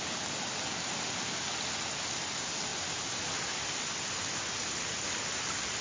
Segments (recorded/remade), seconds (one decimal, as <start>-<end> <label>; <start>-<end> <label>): 0.0-2.7 recorded; 2.7-3.6 remade; 3.6-5.8 recorded